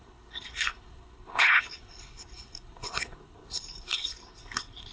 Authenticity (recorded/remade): remade